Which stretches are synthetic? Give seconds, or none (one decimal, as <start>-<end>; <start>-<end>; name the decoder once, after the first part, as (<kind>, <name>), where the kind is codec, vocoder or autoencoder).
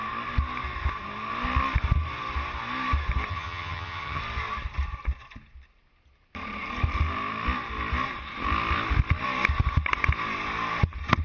3.3-4.2 (vocoder, HiFi-GAN)